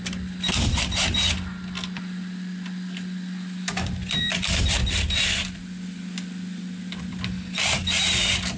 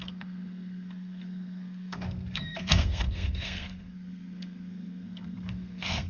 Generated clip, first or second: second